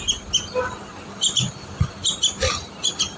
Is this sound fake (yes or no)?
no